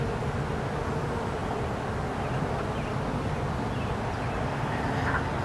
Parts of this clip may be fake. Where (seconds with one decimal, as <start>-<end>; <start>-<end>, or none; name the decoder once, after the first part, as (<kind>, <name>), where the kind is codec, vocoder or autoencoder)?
none